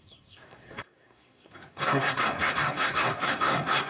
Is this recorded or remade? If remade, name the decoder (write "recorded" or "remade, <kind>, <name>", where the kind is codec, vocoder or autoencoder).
remade, codec, SNAC